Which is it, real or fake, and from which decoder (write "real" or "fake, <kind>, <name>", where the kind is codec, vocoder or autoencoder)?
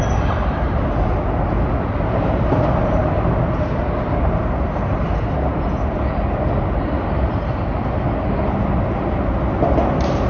real